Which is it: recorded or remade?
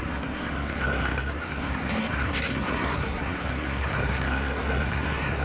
remade